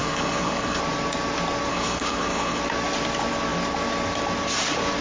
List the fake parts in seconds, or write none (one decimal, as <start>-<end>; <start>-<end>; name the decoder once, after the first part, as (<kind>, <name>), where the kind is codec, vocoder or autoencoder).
0.0-0.8 (codec, HILCodec); 1.7-2.6